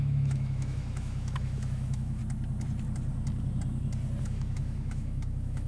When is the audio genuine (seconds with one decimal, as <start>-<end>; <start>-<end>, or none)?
2.2-4.2